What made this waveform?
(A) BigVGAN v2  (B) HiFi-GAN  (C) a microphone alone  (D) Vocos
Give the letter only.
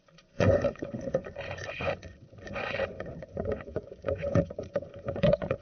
D